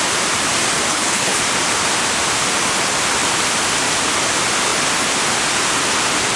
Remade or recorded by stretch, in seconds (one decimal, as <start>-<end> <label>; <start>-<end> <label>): 0.0-0.9 recorded; 0.9-1.4 remade; 1.4-6.4 recorded